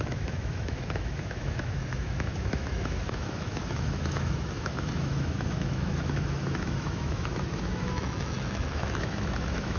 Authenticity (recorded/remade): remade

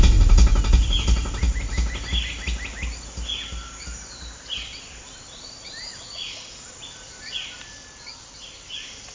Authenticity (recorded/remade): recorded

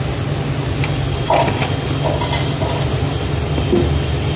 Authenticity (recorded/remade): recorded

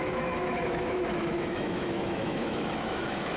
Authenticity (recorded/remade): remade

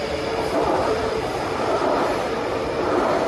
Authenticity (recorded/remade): recorded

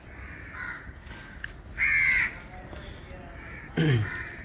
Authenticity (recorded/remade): recorded